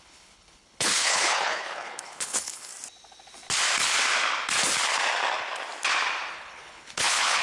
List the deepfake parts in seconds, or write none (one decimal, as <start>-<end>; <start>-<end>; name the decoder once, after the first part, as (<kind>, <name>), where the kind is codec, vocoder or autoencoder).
0.0-2.7 (codec, HILCodec); 6.3-7.4